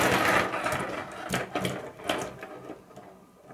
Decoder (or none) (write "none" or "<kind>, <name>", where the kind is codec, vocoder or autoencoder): none